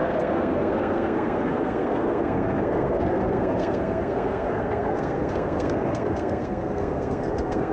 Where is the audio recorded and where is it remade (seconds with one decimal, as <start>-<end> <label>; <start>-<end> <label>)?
0.0-7.7 remade